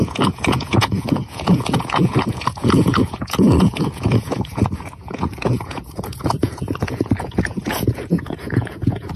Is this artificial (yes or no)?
yes